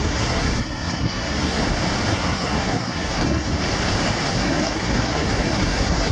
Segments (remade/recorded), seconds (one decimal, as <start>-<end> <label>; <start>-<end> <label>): 0.0-1.6 remade; 1.6-2.1 recorded; 2.1-3.5 remade; 3.5-4.3 recorded; 4.3-6.1 remade